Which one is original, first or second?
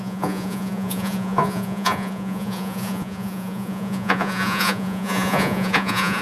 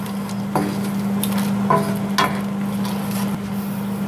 second